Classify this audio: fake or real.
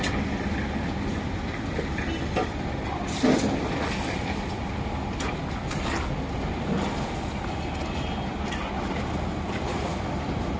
real